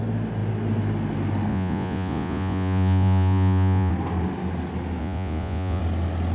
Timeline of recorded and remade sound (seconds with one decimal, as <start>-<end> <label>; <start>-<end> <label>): 0.0-1.5 recorded; 1.5-3.9 remade; 3.9-5.0 recorded; 5.0-5.8 remade; 5.8-6.3 recorded